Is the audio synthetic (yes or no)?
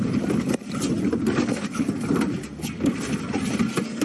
no